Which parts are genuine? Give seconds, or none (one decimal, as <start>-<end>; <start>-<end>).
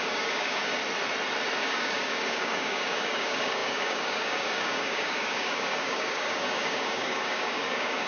0.8-1.6